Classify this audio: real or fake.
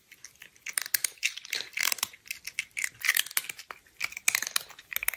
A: real